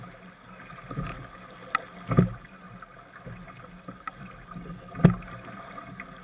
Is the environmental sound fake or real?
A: real